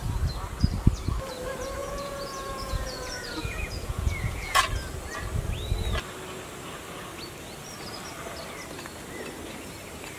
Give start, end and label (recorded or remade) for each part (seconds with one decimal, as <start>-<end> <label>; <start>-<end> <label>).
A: 0.0-1.8 recorded; 1.8-4.6 remade; 4.6-10.2 recorded